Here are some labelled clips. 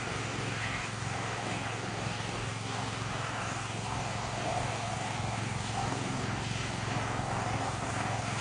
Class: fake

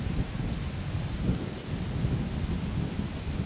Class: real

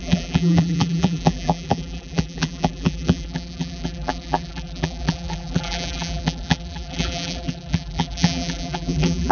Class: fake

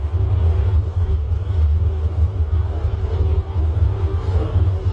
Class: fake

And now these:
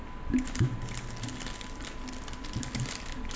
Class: real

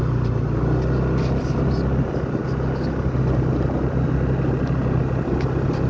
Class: real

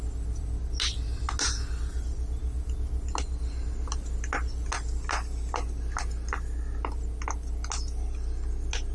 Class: real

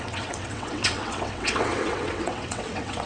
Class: fake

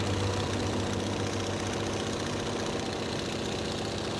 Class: real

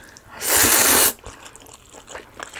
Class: real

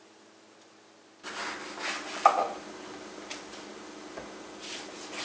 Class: real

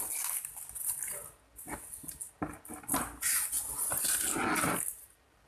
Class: real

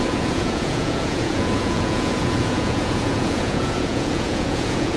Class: fake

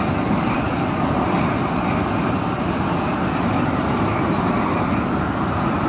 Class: real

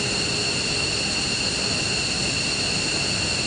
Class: real